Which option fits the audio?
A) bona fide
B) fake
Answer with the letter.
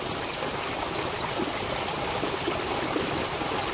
A